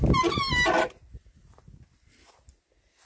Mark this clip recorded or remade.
recorded